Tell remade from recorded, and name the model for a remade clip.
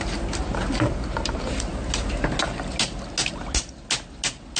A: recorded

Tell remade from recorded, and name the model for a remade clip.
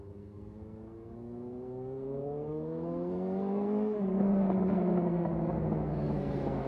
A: remade, codec, SNAC